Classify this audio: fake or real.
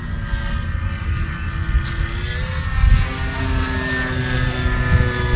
real